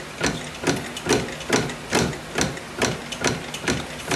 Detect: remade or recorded recorded